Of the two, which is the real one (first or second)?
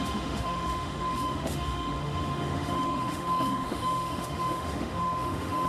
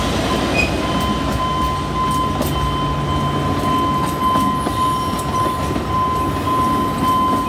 second